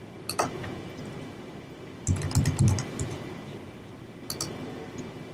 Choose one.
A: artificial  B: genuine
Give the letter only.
B